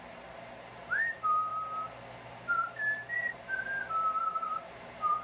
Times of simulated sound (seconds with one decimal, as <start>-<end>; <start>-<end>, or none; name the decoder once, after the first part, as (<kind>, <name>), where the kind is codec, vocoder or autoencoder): none